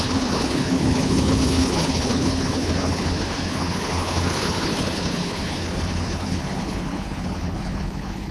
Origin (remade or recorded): remade